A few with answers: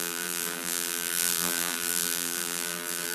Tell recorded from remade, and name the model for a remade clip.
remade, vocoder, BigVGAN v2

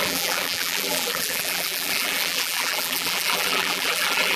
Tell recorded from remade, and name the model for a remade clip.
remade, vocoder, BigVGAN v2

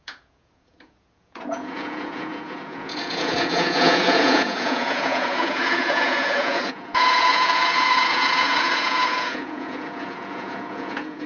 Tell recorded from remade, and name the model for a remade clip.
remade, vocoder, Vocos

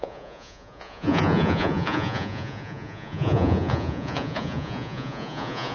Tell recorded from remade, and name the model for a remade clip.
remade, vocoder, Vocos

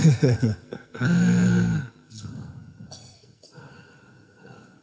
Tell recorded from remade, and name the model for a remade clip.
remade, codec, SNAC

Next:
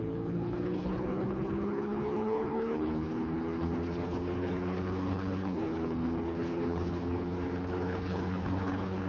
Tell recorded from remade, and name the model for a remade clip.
remade, codec, HILCodec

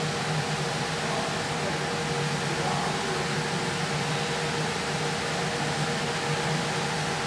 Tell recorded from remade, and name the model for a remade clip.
recorded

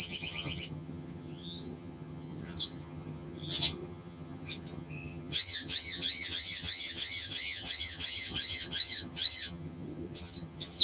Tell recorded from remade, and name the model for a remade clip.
remade, vocoder, HiFi-GAN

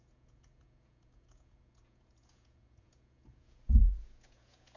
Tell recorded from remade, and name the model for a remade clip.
remade, vocoder, Vocos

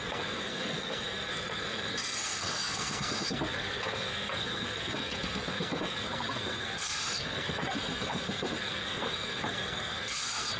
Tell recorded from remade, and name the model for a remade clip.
remade, codec, SNAC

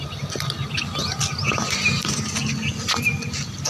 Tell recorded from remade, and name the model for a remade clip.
recorded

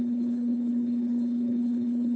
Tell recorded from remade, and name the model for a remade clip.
remade, codec, HILCodec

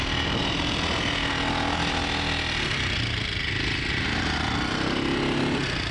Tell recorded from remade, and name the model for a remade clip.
recorded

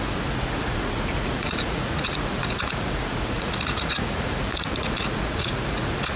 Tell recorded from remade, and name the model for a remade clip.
remade, vocoder, Vocos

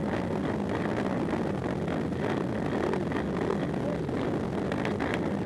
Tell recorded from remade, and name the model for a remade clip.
recorded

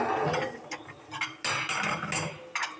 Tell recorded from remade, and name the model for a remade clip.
recorded